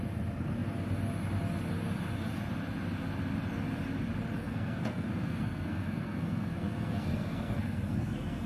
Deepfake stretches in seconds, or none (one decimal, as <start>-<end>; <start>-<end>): 4.4-8.5